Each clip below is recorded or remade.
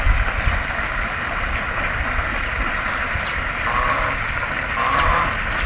recorded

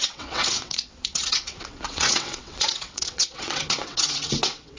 remade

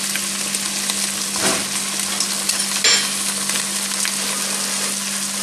recorded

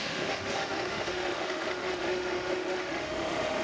remade